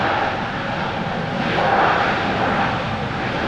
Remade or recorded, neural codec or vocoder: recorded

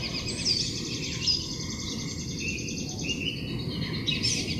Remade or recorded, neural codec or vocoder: recorded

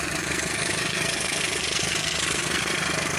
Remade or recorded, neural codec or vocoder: remade, codec, SNAC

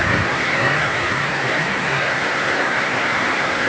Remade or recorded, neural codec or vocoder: remade, codec, SNAC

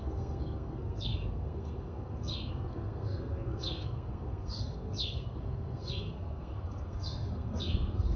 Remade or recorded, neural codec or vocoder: remade, codec, SNAC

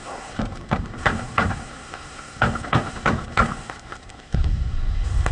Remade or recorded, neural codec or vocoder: remade, codec, SNAC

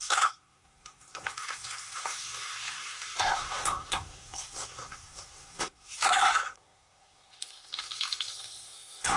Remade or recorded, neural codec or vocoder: remade, codec, SNAC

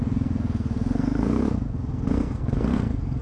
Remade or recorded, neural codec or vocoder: remade, codec, SNAC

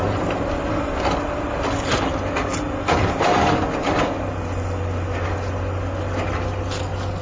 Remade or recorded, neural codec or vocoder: recorded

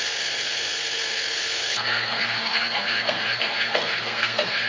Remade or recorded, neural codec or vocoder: remade, codec, SNAC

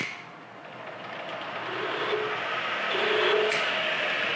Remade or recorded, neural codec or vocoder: recorded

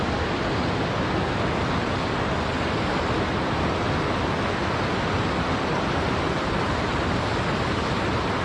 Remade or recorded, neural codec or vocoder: recorded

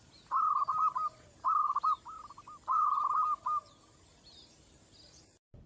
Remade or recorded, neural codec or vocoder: recorded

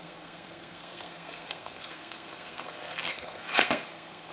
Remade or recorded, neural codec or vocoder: remade, codec, SNAC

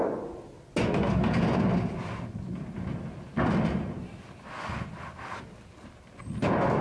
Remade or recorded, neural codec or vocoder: recorded